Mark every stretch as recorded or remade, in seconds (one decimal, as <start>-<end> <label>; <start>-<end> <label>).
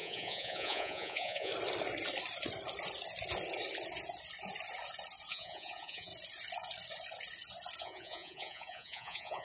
0.0-1.5 remade; 1.5-5.3 recorded; 5.3-6.1 remade; 6.1-7.8 recorded; 7.8-9.4 remade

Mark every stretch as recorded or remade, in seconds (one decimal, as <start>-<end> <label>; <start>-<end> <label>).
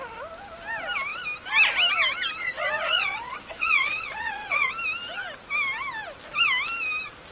0.0-2.4 recorded; 2.4-4.7 remade; 4.7-7.3 recorded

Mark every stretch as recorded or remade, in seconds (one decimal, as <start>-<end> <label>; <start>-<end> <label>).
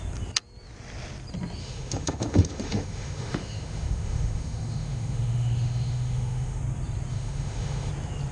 0.0-1.6 recorded; 1.6-6.6 remade; 6.6-7.1 recorded; 7.1-7.9 remade; 7.9-8.3 recorded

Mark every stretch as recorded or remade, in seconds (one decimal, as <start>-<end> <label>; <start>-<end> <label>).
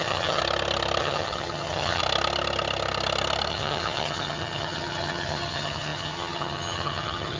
0.0-0.4 remade; 0.4-1.0 recorded; 1.0-2.0 remade; 2.0-3.5 recorded; 3.5-7.4 remade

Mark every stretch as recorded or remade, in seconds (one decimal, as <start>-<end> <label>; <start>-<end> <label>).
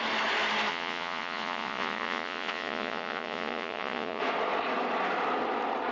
0.0-0.7 recorded; 0.7-4.2 remade; 4.2-5.9 recorded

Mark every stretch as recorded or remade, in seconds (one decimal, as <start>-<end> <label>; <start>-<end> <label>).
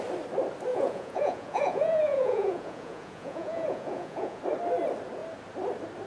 0.0-0.7 recorded; 0.7-4.4 remade; 4.4-6.1 recorded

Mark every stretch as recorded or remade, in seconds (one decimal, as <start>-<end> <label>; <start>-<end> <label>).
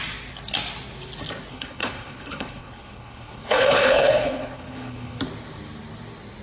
0.0-1.5 recorded; 1.5-5.2 remade; 5.2-6.4 recorded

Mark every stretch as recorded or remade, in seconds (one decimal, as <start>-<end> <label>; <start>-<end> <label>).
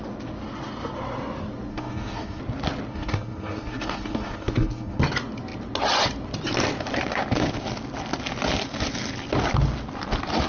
0.0-1.7 recorded; 1.7-2.4 remade; 2.4-2.9 recorded; 2.9-5.0 remade; 5.0-10.5 recorded